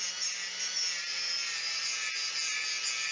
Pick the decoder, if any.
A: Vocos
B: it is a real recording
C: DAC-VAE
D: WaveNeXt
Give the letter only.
B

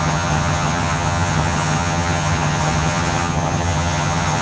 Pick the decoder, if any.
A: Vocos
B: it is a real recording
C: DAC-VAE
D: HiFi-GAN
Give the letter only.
D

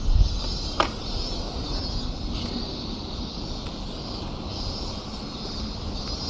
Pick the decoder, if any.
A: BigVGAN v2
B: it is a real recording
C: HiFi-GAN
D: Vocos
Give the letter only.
B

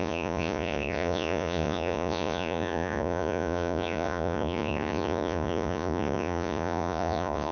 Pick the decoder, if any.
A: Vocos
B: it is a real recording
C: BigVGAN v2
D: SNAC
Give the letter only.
A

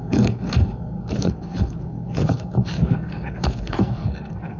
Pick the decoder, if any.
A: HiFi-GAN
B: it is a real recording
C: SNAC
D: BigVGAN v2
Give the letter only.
C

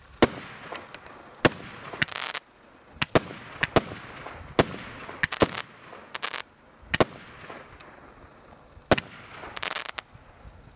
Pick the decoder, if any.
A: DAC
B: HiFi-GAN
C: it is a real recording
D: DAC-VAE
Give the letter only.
C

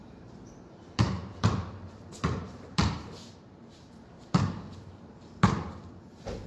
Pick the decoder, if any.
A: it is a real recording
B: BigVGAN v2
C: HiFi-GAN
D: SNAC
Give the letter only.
B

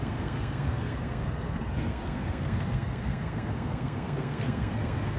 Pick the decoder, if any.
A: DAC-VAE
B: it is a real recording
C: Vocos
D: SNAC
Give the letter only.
D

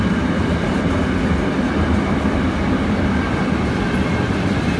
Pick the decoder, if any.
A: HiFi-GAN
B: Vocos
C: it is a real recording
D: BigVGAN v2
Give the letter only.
C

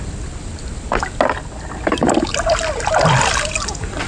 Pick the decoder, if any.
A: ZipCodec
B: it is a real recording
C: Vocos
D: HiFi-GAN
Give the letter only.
B